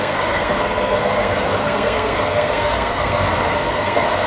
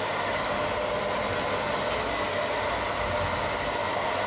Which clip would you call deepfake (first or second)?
first